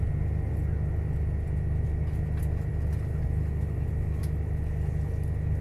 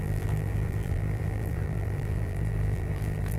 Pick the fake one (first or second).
second